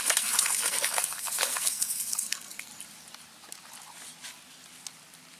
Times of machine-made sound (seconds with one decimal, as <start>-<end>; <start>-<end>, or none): 0.0-2.7